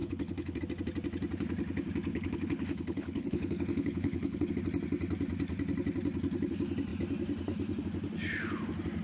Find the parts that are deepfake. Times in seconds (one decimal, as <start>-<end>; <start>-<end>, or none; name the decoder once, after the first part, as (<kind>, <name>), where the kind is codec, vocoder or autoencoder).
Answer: 0.0-0.6 (codec, HILCodec); 2.1-4.5